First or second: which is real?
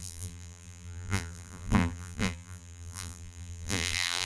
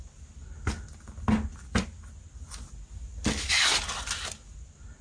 second